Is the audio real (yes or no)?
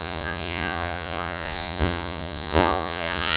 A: no